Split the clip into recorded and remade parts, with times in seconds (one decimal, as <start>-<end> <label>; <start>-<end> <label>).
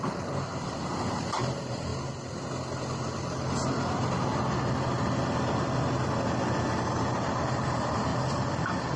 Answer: 0.0-1.9 remade; 1.9-6.9 recorded; 6.9-9.0 remade